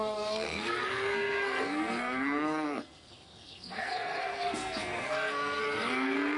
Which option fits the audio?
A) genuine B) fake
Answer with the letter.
B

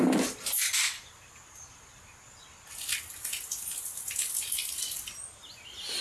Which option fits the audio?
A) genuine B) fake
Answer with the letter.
A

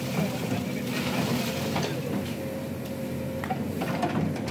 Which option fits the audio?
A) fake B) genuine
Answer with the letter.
B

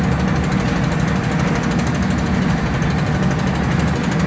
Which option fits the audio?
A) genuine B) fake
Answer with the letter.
A